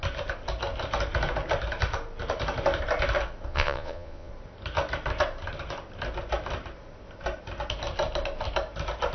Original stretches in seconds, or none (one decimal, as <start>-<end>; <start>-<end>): 0.0-3.5; 4.3-9.1